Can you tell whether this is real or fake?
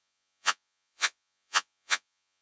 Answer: fake